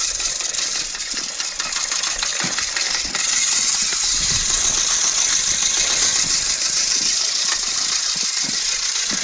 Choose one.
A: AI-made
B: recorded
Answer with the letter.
B